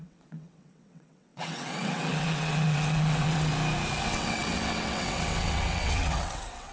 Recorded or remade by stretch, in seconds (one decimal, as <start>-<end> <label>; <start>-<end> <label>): 0.0-3.5 remade; 3.5-4.0 recorded; 4.0-6.7 remade